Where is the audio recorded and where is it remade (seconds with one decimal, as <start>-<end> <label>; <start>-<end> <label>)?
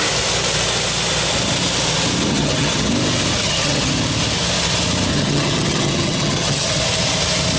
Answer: 0.0-2.3 recorded; 2.3-2.9 remade; 2.9-3.4 recorded; 3.4-3.9 remade; 3.9-5.1 recorded; 5.1-6.8 remade; 6.8-7.6 recorded